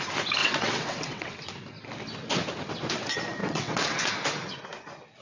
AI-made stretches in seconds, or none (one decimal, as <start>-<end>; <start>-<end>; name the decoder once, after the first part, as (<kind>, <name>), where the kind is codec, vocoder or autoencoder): 0.4-1.5 (vocoder, WaveNeXt); 3.4-4.1